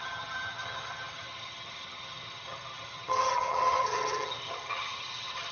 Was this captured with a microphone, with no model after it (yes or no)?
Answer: no